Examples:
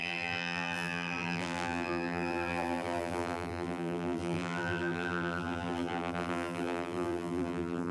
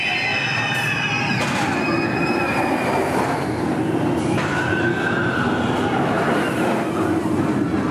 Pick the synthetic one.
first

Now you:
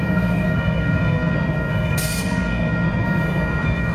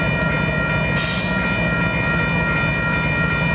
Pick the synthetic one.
first